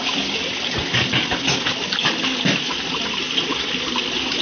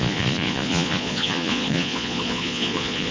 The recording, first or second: first